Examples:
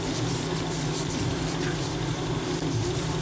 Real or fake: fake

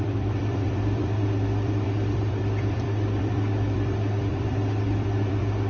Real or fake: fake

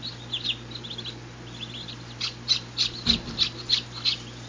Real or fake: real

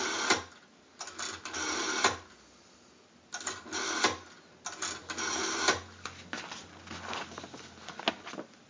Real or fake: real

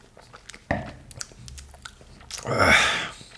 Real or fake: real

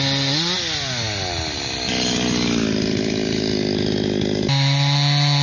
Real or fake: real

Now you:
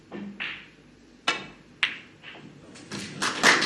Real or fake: real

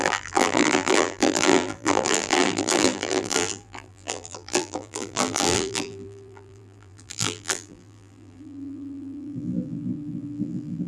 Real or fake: fake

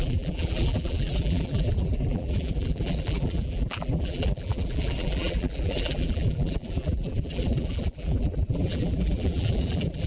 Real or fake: fake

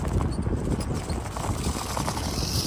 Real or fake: real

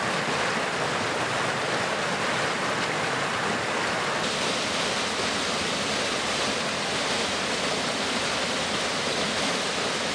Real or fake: fake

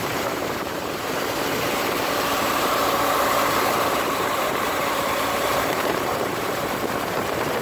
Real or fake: fake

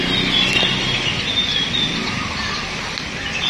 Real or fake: real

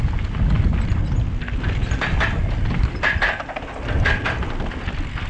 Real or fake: real